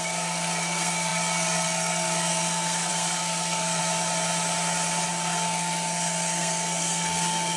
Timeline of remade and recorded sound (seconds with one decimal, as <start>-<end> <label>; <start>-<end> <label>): 0.0-3.8 remade; 3.8-5.1 recorded; 5.1-7.6 remade